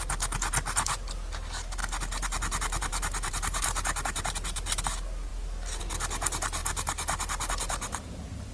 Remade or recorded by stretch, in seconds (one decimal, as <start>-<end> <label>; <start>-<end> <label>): 0.0-1.8 recorded; 1.8-4.8 remade; 4.8-6.6 recorded; 6.6-7.5 remade; 7.5-8.5 recorded

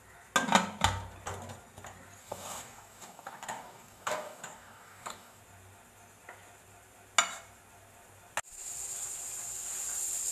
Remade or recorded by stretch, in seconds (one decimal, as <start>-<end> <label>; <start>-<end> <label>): 0.0-2.2 recorded; 2.2-5.4 remade; 5.4-10.3 recorded

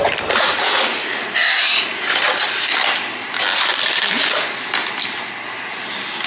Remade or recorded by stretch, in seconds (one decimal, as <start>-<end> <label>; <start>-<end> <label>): 0.0-6.3 recorded

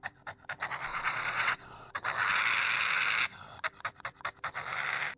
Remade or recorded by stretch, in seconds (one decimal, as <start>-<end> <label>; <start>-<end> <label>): 0.0-0.9 recorded; 0.9-1.9 remade; 1.9-5.2 recorded

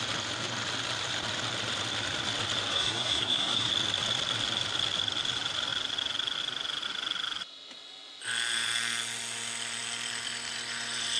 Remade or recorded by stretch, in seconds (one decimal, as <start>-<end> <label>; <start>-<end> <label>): 0.0-2.7 recorded; 2.7-3.7 remade; 3.7-11.2 recorded

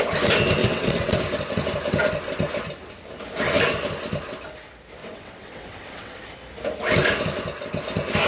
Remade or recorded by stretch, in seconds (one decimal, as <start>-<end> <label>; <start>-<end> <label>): 0.0-0.6 recorded; 0.6-1.2 remade; 1.2-5.0 recorded; 5.0-6.3 remade; 6.3-8.3 recorded